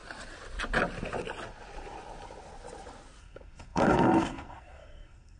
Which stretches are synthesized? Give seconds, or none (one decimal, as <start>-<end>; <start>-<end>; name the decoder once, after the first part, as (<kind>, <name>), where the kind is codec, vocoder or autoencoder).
3.2-5.4 (codec, SNAC)